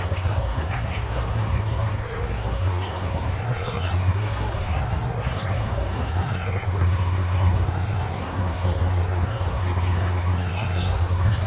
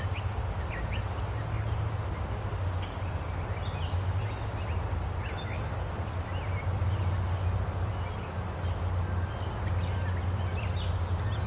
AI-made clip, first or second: first